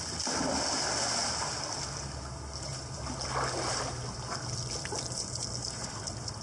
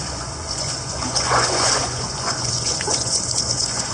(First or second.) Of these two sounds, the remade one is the second